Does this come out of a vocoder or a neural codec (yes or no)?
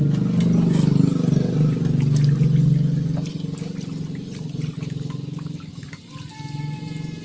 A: no